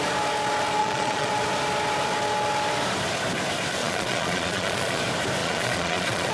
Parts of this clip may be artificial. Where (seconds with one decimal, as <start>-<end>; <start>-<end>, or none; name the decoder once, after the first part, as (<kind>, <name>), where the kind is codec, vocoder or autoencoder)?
0.8-1.3 (vocoder, Vocos); 3.8-5.0; 5.4-6.3